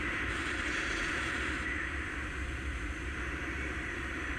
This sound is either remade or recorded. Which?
recorded